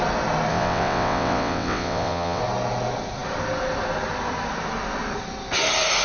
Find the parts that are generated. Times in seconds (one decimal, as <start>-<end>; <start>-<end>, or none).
0.5-2.4

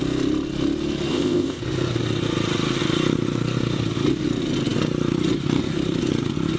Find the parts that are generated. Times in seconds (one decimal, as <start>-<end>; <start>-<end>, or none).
1.1-1.6

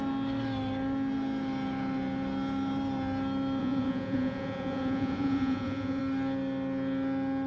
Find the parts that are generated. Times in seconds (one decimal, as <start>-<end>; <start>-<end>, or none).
3.6-6.0

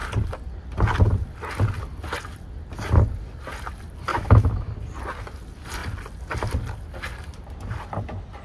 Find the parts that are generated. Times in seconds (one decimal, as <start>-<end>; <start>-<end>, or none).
4.1-4.7

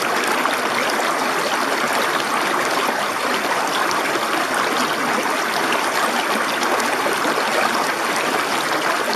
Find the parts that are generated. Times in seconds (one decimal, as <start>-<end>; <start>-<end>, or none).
none

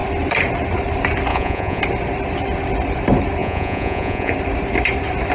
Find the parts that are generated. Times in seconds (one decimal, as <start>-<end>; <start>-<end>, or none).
1.3-1.8; 3.4-4.3

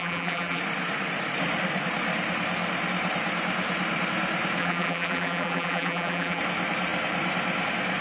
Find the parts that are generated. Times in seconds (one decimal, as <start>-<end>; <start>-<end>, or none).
0.0-0.6; 4.6-6.4